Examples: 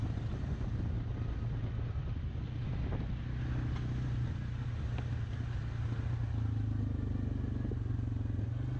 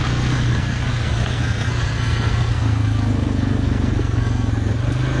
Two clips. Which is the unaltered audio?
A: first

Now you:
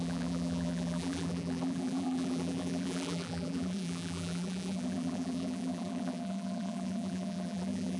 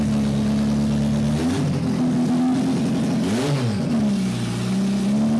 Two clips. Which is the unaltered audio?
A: second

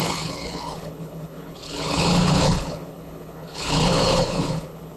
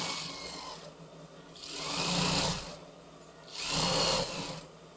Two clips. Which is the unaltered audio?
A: second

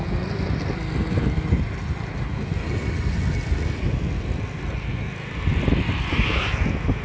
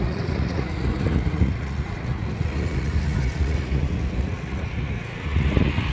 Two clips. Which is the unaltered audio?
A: first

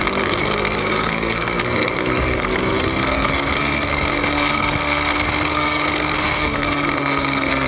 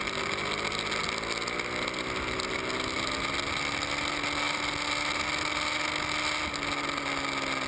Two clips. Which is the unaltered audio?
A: second